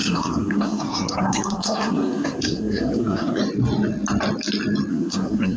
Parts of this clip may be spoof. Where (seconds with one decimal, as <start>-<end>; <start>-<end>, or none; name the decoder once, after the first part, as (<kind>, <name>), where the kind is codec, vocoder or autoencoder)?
0.0-3.4 (codec, SNAC); 4.9-5.6